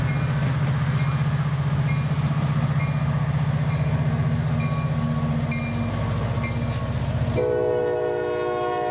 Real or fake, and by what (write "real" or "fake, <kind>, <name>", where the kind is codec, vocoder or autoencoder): real